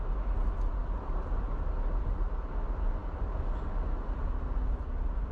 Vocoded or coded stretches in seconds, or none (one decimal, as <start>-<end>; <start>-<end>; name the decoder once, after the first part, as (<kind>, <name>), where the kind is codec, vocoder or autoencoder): none